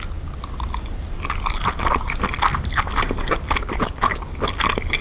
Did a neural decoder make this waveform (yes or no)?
no